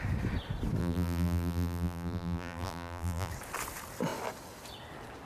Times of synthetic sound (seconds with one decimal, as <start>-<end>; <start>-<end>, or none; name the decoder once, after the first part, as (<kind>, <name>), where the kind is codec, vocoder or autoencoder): 0.8-3.3 (vocoder, BigVGAN v2)